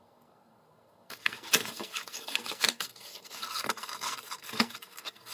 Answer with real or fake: fake